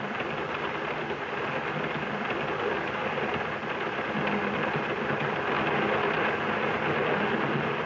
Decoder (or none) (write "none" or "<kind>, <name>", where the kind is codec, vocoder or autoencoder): none